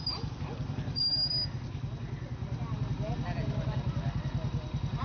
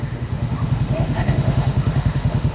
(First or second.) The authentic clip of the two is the first